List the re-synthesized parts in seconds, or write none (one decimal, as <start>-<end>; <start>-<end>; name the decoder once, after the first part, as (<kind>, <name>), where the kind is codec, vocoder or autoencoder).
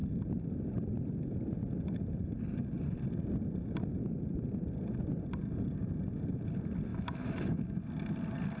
6.9-7.8 (autoencoder, DAC-VAE)